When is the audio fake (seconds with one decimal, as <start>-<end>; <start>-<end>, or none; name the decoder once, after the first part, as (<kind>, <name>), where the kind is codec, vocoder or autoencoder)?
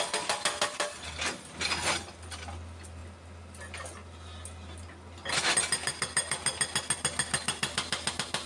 none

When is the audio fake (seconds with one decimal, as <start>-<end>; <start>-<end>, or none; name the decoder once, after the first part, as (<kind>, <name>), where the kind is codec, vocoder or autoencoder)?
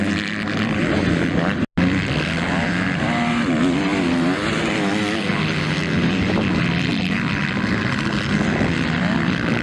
none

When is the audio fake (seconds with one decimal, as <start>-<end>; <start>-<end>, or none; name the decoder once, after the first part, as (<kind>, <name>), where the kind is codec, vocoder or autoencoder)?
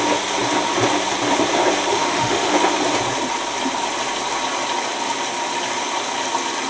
1.9-2.5 (autoencoder, DAC-VAE)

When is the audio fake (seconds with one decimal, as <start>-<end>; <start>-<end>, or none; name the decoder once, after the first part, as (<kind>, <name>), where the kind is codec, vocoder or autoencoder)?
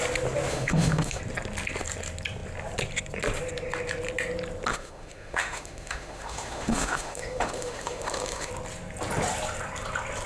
0.5-1.2 (autoencoder, DAC-VAE); 4.7-8.5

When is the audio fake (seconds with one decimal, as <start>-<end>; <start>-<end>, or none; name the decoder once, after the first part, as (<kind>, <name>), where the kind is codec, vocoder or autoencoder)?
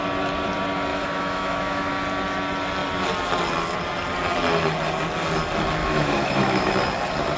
0.9-1.9 (autoencoder, DAC-VAE); 5.8-6.7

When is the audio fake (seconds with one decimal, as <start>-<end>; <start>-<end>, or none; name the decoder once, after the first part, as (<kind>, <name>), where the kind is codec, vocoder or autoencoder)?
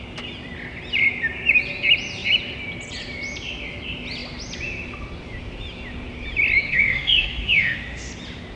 6.6-8.1 (autoencoder, DAC-VAE)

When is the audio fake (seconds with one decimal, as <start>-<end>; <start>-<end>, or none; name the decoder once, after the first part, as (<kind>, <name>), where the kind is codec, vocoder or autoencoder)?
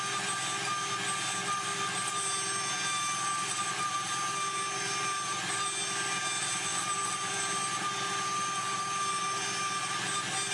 none